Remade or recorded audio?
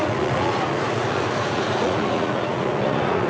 remade